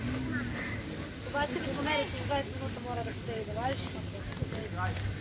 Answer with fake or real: real